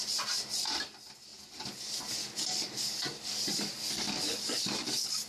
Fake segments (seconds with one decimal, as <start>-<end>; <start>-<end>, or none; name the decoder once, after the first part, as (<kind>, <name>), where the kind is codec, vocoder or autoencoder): 2.2-5.3 (codec, DAC)